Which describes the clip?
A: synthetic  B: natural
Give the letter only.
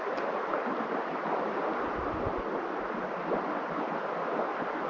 B